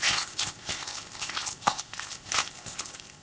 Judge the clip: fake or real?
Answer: fake